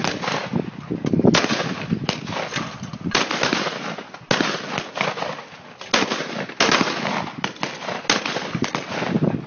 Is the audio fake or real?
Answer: real